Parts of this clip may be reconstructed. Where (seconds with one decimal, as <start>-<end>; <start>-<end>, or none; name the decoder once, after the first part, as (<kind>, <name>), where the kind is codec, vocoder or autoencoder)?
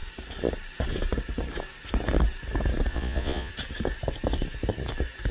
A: 2.9-3.5 (vocoder, Vocos)